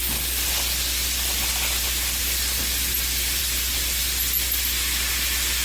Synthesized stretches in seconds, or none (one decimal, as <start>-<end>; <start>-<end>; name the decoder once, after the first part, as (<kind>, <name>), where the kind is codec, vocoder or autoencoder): none